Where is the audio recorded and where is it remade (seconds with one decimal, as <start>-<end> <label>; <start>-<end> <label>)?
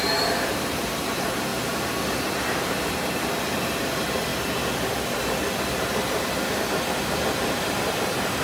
0.0-1.5 remade; 1.5-2.6 recorded; 2.6-4.3 remade; 4.3-7.6 recorded; 7.6-8.4 remade